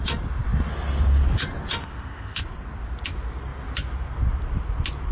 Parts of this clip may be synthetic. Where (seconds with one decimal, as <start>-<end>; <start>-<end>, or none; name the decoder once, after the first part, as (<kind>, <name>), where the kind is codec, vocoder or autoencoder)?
1.8-2.4 (codec, ZipCodec)